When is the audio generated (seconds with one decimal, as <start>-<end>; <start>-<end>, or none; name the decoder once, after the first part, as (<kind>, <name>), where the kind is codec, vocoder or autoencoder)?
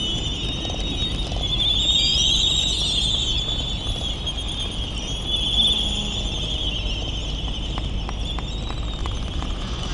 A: 2.1-2.8 (vocoder, Vocos); 9.0-9.9